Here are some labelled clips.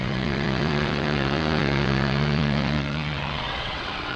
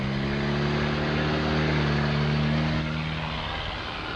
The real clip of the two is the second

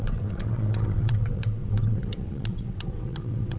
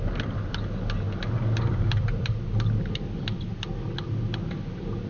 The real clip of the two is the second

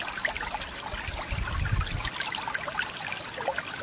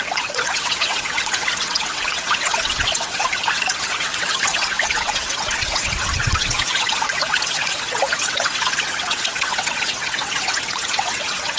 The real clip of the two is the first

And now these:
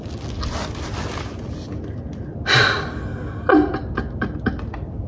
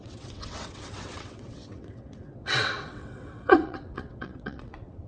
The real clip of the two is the first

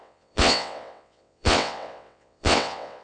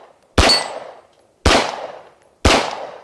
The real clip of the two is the second